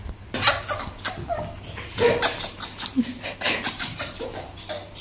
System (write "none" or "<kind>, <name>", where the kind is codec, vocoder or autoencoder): none